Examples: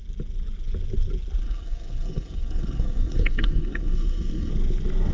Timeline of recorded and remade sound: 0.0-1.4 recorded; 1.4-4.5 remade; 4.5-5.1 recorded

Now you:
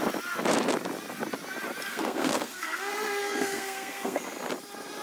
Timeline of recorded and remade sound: 0.0-1.9 recorded; 1.9-4.2 remade; 4.2-5.0 recorded

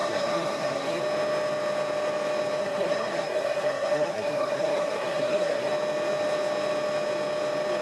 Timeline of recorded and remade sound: 0.0-1.0 remade; 1.0-2.6 recorded; 2.6-5.7 remade; 5.7-7.8 recorded

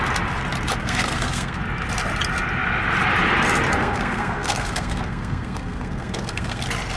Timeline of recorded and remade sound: 0.0-0.8 recorded; 0.8-1.6 remade; 1.6-3.8 recorded; 3.8-6.6 remade; 6.6-7.0 recorded

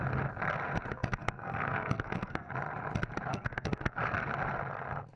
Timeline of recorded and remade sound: 0.0-0.9 recorded; 0.9-2.5 remade; 2.5-3.3 recorded; 3.3-4.0 remade; 4.0-5.2 recorded

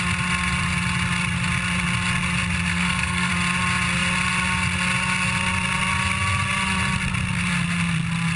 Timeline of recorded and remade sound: 0.0-2.7 recorded; 2.7-3.3 remade; 3.3-8.4 recorded

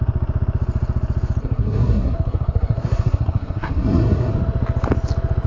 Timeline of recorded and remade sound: 0.0-1.4 recorded; 1.4-4.3 remade; 4.3-5.5 recorded